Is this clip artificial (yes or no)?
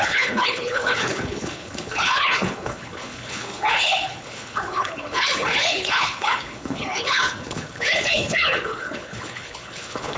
yes